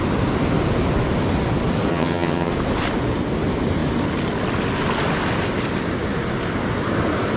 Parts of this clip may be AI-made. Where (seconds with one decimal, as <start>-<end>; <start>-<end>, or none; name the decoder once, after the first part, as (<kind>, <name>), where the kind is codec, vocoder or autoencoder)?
1.9-2.5 (vocoder, HiFi-GAN)